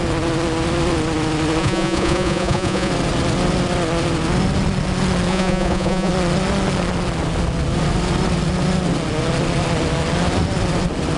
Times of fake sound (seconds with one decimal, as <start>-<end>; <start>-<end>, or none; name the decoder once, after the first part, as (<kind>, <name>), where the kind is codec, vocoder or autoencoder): 1.6-2.9 (vocoder, Vocos); 5.3-6.1